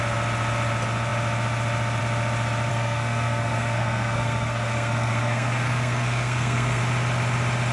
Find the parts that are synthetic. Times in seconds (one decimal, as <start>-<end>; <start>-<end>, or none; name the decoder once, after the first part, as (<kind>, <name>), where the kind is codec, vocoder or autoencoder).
2.7-6.8 (codec, SNAC)